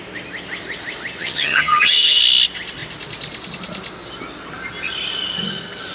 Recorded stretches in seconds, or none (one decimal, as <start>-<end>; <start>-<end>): 0.0-1.2; 2.2-5.9